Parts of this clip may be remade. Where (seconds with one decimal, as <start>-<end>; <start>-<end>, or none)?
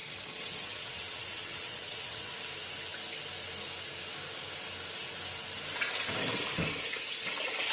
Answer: 0.0-2.3